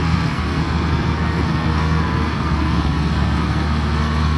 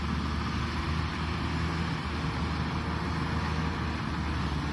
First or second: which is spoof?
first